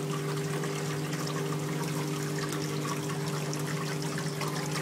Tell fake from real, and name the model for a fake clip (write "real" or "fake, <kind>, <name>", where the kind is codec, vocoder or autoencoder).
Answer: real